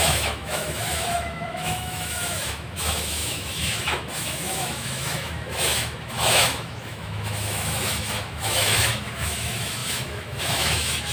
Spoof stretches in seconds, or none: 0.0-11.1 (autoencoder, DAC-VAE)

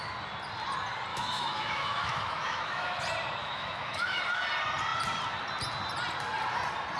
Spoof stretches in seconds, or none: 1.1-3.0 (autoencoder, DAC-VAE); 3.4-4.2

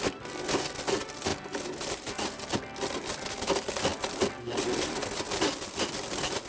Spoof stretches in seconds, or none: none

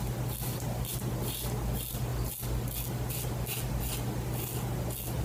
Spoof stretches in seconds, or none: none

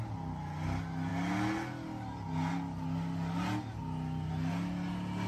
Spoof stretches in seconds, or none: none

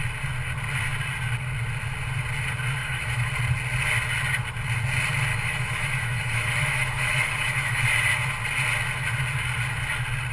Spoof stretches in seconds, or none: 2.8-3.3 (autoencoder, DAC-VAE); 5.3-7.8

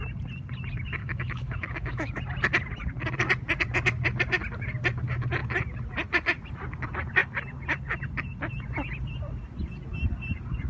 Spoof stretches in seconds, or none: 1.0-2.2 (autoencoder, DAC-VAE)

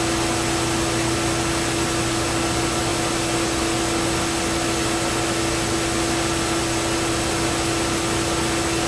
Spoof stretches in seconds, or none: none